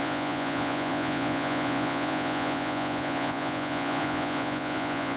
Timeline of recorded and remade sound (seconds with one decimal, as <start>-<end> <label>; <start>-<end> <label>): 0.0-5.2 remade